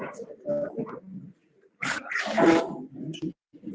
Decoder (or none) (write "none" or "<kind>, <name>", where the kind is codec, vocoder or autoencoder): none